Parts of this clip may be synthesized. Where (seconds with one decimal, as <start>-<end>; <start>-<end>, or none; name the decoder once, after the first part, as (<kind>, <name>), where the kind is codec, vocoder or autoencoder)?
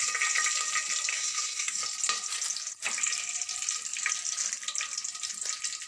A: 1.1-1.8 (codec, SNAC)